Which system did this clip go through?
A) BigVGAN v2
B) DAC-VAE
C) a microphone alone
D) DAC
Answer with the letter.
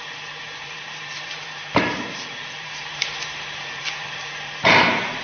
A